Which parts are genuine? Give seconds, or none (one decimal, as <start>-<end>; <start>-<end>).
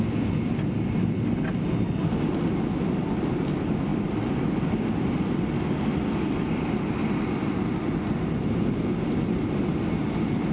0.0-10.5